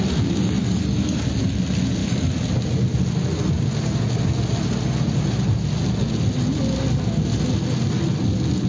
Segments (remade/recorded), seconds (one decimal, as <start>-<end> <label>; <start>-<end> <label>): 0.0-0.6 recorded; 0.6-1.2 remade; 1.2-8.7 recorded

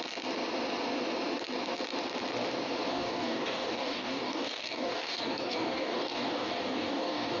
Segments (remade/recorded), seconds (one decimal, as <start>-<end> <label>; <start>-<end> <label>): 0.0-2.9 recorded; 2.9-7.4 remade